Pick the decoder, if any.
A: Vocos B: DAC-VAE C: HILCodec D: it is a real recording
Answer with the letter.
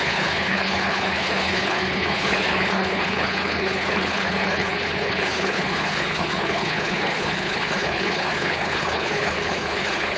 C